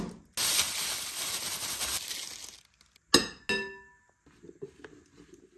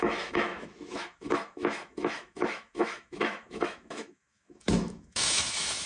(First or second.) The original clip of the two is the first